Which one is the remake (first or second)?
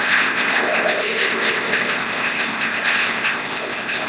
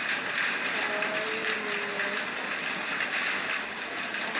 first